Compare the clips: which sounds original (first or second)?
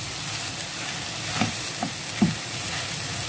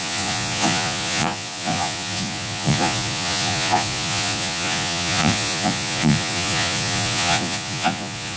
first